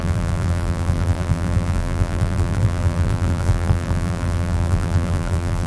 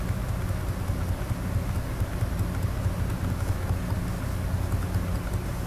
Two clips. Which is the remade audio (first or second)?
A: first